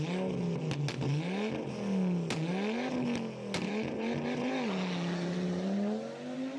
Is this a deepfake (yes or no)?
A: no